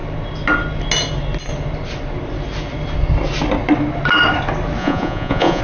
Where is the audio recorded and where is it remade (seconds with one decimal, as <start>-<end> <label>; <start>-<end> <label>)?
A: 0.0-4.8 recorded; 4.8-5.6 remade